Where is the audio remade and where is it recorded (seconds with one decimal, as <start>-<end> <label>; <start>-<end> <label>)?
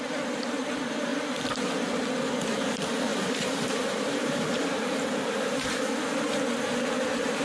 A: 0.0-3.1 recorded; 3.1-5.9 remade; 5.9-7.4 recorded